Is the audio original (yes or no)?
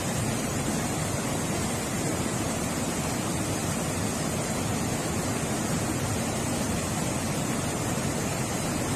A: yes